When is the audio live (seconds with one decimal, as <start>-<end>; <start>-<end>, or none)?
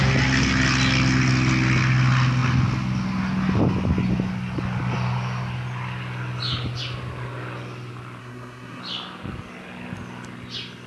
0.0-8.2; 8.8-10.9